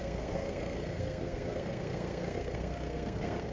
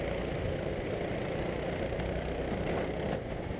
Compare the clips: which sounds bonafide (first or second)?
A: second